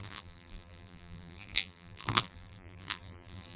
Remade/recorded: remade